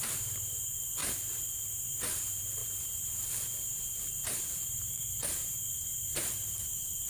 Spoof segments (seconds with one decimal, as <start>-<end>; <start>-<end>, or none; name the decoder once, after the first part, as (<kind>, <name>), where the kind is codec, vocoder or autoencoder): 0.0-1.0 (vocoder, BigVGAN v2); 1.7-7.1